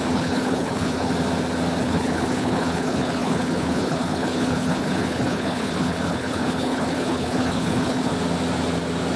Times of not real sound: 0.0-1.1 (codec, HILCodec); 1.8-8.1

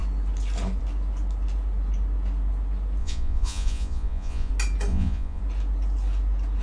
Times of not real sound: 3.0-4.5 (vocoder, Vocos); 4.9-5.4

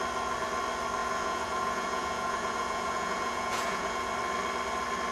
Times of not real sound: 1.0-4.1 (vocoder, Vocos)

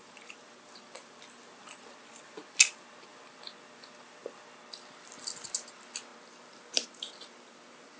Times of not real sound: none

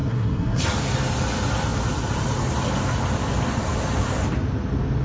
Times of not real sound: 0.0-0.6 (codec, SNAC)

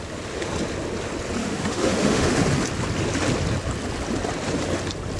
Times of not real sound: 1.4-2.4 (autoencoder, DAC-VAE)

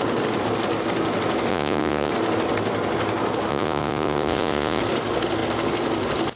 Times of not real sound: 1.5-2.1 (vocoder, Vocos); 3.5-4.8